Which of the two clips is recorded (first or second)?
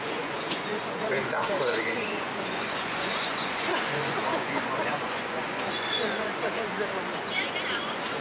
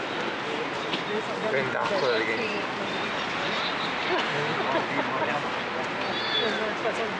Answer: second